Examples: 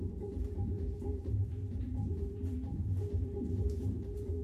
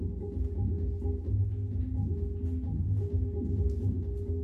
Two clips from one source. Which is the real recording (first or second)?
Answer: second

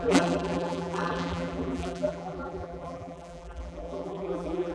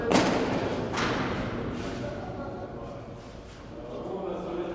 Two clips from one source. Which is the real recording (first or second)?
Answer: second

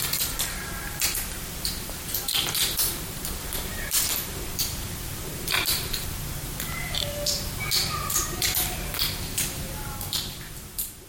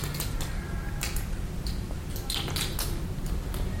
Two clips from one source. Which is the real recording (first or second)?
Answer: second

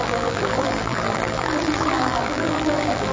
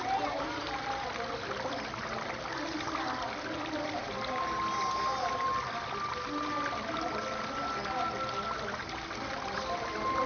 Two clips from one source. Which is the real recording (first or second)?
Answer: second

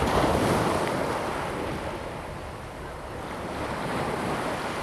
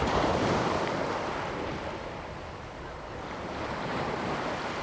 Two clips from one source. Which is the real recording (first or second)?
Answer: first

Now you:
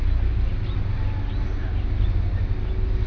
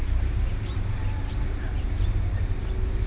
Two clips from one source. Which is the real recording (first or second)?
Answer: first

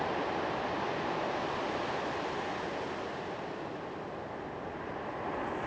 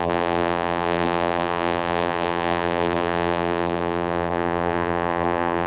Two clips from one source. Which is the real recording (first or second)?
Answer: first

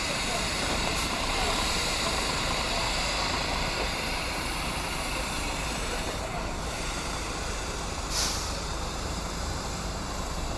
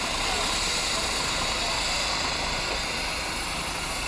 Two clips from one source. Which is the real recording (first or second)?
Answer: second